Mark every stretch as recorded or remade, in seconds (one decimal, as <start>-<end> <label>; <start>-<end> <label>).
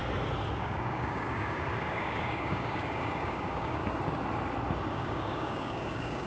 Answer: 0.0-0.5 recorded; 0.5-3.8 remade; 3.8-4.9 recorded; 4.9-6.3 remade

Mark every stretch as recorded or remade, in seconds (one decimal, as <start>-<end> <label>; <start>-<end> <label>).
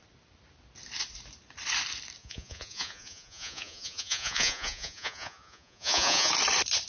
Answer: 0.0-2.2 recorded; 2.2-6.3 remade; 6.3-6.9 recorded